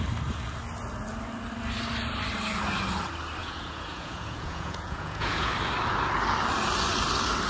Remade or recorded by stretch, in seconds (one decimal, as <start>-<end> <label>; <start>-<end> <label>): 0.0-3.4 recorded; 3.4-5.5 remade; 5.5-7.5 recorded